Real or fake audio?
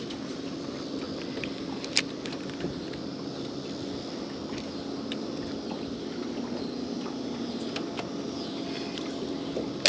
real